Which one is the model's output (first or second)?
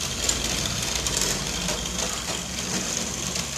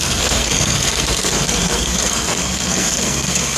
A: second